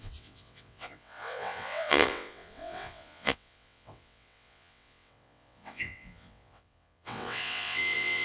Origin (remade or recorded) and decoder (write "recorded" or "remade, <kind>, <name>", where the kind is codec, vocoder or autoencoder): remade, vocoder, WaveNeXt